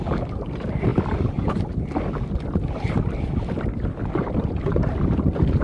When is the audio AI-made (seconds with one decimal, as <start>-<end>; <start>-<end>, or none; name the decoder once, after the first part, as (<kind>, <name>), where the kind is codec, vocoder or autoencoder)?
none